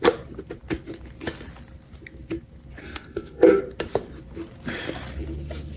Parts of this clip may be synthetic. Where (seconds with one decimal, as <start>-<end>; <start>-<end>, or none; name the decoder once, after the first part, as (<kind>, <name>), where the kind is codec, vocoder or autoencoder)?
2.8-3.6 (codec, SNAC)